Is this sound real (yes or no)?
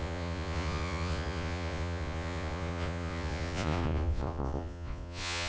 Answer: no